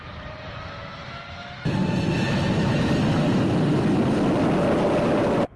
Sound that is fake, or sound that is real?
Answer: real